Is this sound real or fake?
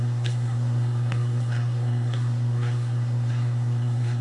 fake